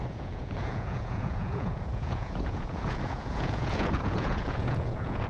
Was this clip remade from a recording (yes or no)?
yes